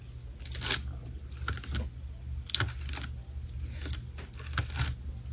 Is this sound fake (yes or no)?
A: no